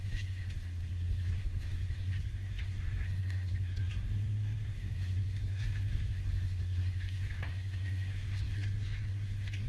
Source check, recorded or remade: remade